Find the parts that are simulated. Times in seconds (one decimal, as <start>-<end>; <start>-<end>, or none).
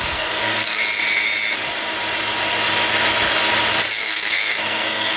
0.0-0.8; 3.9-5.2